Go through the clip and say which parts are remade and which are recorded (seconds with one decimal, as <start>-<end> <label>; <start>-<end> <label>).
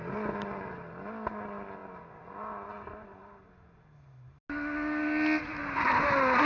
0.0-6.5 recorded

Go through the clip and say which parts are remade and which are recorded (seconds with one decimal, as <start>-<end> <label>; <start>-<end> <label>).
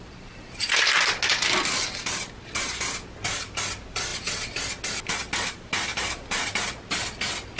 0.0-7.6 recorded